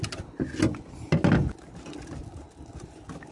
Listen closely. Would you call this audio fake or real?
real